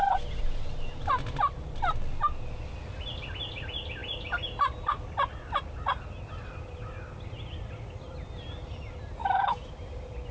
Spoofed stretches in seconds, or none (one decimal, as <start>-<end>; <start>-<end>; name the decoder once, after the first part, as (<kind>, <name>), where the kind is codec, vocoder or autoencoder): 9.2-9.7 (autoencoder, DAC-VAE)